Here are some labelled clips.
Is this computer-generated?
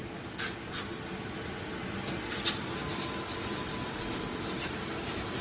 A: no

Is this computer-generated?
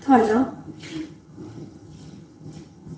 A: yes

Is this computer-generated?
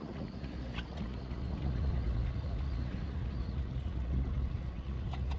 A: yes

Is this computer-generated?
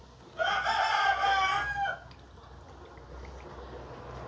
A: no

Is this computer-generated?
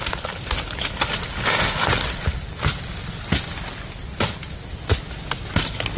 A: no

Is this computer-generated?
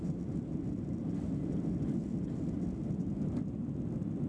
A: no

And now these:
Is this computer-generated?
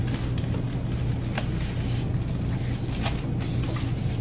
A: no